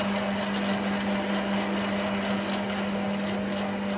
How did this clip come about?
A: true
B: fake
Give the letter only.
A